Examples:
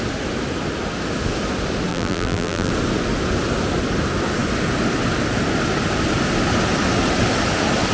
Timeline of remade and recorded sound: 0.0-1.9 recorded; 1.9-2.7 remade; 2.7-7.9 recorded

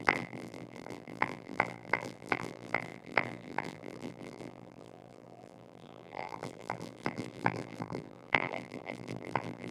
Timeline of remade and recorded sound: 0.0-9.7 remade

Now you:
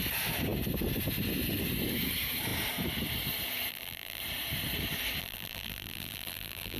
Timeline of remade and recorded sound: 0.0-3.7 recorded; 3.7-4.2 remade; 4.2-5.2 recorded; 5.2-6.8 remade

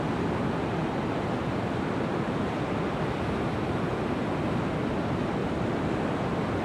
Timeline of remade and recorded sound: 0.0-5.4 recorded; 5.4-6.6 remade

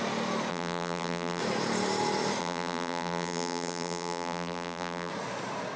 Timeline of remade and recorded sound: 0.0-0.5 recorded; 0.5-1.4 remade; 1.4-2.4 recorded; 2.4-5.1 remade; 5.1-5.8 recorded

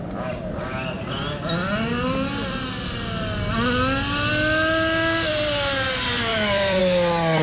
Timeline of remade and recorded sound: 0.0-6.3 recorded; 6.3-6.8 remade; 6.8-7.4 recorded

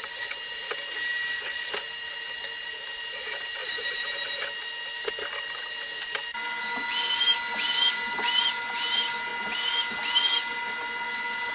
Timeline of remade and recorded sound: 0.0-3.6 recorded; 3.6-4.1 remade; 4.1-11.5 recorded

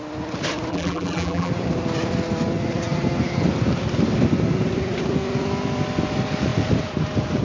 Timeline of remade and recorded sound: 0.0-0.7 recorded; 0.7-1.5 remade; 1.5-7.4 recorded